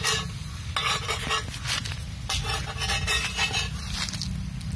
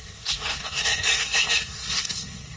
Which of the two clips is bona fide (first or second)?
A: first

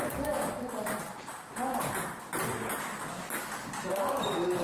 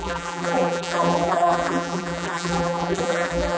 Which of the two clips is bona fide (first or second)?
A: first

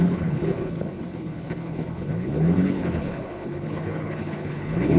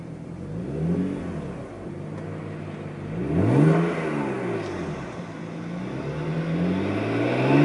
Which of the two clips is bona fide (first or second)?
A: second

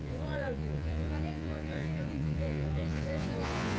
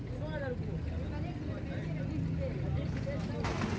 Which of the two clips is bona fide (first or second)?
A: second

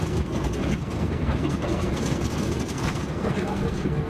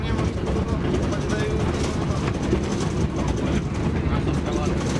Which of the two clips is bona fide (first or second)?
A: second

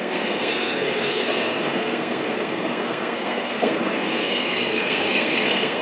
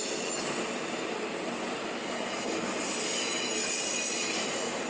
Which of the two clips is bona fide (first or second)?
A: second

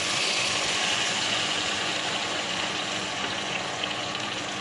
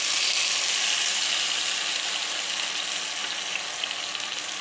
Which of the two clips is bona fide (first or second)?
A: second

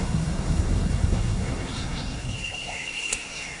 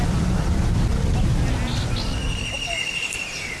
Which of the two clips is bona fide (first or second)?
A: second